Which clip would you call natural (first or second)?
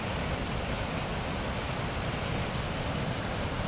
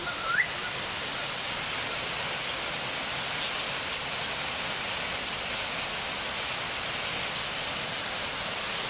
second